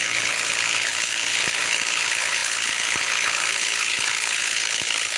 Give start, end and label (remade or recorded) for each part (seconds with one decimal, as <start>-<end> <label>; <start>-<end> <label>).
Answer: 0.0-5.2 remade